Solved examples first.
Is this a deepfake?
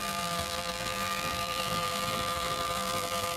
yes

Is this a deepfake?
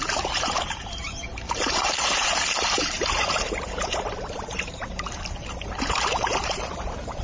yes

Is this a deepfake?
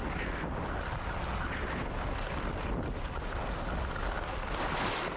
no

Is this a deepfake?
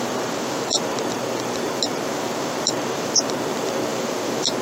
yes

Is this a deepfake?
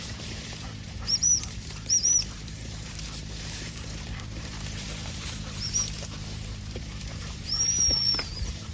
yes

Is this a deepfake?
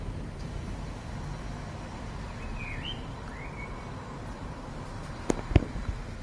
no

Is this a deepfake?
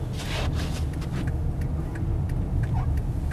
no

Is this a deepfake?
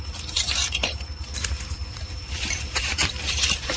yes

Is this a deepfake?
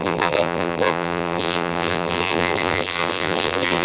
yes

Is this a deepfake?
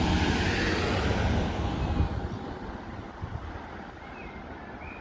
no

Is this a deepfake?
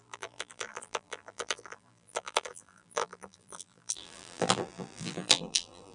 yes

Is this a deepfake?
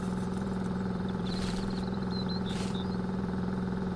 yes